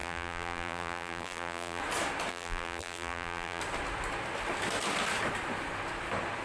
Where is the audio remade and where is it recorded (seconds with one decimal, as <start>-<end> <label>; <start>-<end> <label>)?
0.0-1.8 remade; 1.8-2.3 recorded; 2.3-3.6 remade; 3.6-6.4 recorded